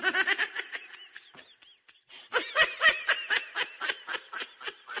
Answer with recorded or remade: recorded